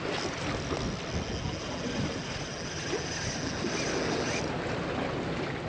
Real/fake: real